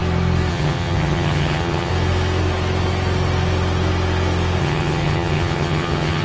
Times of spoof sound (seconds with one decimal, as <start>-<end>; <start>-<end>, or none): 0.5-1.9; 4.6-6.2